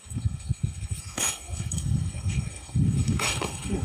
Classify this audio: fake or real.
fake